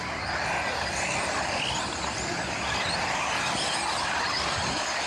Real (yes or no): yes